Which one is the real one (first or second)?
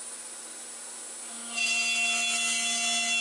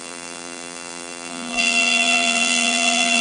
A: first